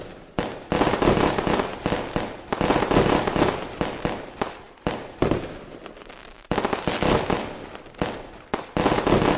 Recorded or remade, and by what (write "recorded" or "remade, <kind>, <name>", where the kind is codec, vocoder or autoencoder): recorded